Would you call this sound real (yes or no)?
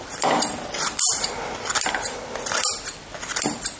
yes